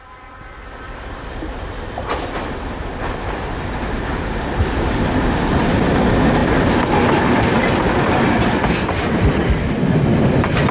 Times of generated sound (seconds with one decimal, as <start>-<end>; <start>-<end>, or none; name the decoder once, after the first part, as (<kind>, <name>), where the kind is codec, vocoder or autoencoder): 0.0-6.4 (vocoder, BigVGAN v2); 9.7-10.7